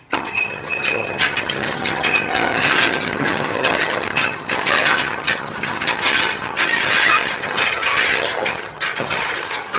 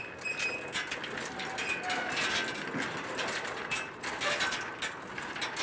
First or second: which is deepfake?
first